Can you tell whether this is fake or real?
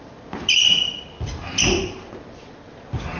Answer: real